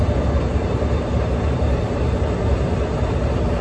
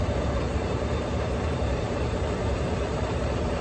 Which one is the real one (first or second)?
first